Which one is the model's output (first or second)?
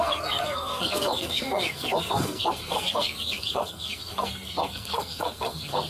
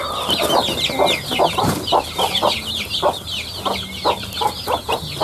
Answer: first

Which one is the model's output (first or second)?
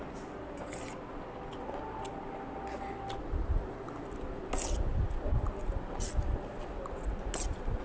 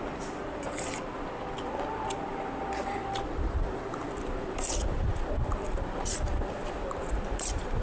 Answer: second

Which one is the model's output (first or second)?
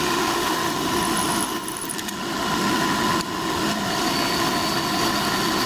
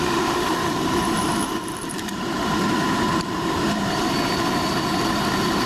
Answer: second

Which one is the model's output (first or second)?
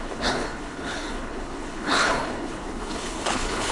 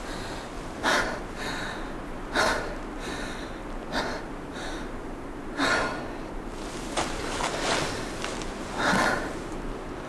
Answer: first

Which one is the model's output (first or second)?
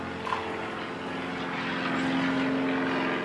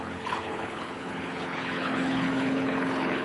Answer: second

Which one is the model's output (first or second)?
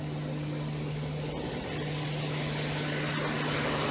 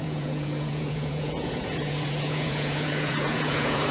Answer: second